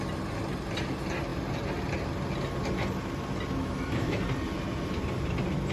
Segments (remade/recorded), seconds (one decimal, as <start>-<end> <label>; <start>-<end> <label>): 0.0-3.6 recorded; 3.6-4.2 remade; 4.2-5.7 recorded